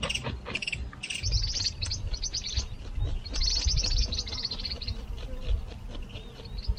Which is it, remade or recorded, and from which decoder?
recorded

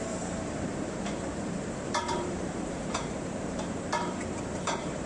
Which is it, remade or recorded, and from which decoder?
remade, vocoder, BigVGAN v2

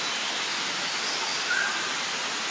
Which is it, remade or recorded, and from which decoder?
recorded